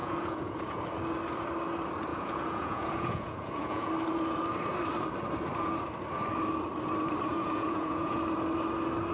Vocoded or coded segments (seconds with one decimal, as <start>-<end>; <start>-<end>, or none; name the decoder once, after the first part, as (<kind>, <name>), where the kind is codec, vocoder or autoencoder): 0.0-0.8 (vocoder, Vocos); 2.1-3.9; 7.3-8.2